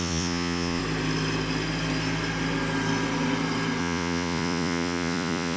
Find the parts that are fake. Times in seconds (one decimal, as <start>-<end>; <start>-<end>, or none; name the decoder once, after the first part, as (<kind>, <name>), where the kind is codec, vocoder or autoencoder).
0.0-0.8 (vocoder, Vocos); 3.8-5.6